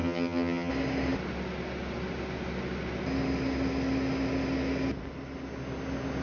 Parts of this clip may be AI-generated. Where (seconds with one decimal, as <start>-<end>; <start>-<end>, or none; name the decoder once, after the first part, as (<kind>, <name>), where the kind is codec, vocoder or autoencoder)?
0.0-0.7 (vocoder, HiFi-GAN)

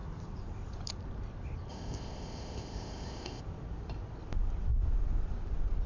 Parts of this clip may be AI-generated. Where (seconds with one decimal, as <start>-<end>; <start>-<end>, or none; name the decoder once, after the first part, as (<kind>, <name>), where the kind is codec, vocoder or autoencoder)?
1.7-3.4 (codec, ZipCodec)

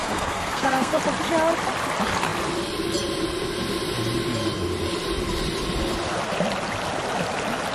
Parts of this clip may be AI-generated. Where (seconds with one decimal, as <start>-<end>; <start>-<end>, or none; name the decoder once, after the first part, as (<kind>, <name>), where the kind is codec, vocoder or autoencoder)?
0.0-1.0 (codec, SNAC)

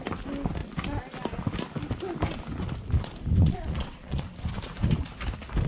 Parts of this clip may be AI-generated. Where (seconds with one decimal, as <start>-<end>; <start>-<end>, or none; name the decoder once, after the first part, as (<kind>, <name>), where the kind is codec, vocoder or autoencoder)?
3.4-4.2 (vocoder, Vocos)

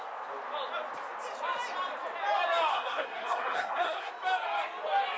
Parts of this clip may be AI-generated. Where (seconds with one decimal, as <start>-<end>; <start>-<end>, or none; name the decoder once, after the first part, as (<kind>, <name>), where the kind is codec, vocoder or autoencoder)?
2.7-4.1 (codec, SNAC)

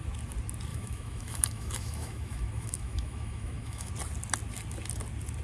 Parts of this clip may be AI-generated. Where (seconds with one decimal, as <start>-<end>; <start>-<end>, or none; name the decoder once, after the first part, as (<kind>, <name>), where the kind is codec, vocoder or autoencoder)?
0.7-3.9 (autoencoder, DAC-VAE)